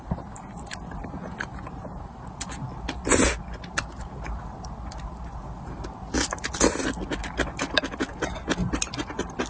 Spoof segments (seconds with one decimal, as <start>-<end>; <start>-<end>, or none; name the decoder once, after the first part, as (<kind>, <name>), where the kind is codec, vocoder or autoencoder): none